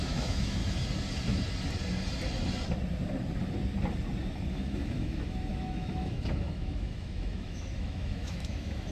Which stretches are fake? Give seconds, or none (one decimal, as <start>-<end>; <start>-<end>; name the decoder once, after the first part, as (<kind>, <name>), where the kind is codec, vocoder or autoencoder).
0.0-0.6 (autoencoder, DAC-VAE); 4.5-8.9